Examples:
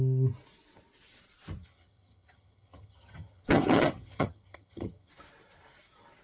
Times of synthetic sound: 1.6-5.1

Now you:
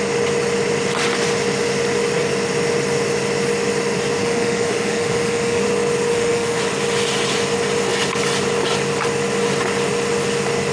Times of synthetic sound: 4.2-5.6; 6.1-6.6

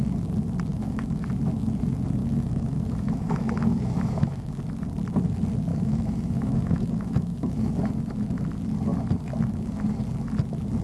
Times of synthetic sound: 0.7-1.3; 2.2-4.6; 5.7-7.7

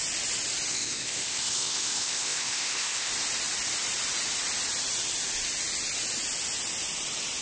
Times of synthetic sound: 0.7-3.1

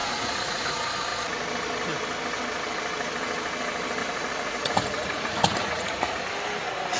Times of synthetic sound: 0.0-0.7; 4.0-6.2

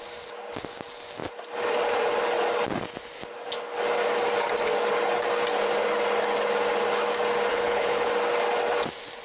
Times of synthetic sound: 7.5-8.1

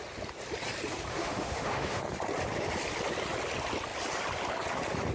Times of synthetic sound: 1.1-2.0